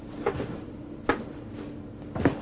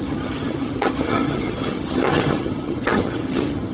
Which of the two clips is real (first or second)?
first